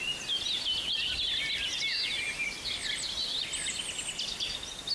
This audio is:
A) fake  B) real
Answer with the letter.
B